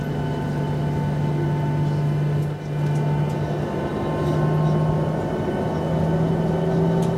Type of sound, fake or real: real